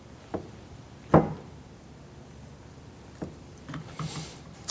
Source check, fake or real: fake